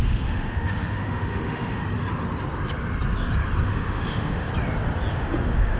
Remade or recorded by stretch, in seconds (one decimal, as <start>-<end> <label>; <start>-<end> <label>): 0.0-1.8 remade; 1.8-3.6 recorded; 3.6-4.5 remade; 4.5-5.1 recorded; 5.1-5.8 remade